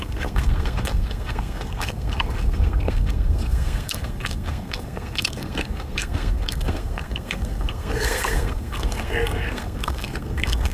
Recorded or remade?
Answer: remade